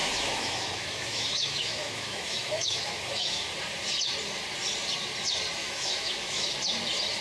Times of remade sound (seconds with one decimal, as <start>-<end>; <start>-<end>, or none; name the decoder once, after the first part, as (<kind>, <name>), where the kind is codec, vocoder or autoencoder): 0.0-3.5 (autoencoder, DAC-VAE); 5.6-6.5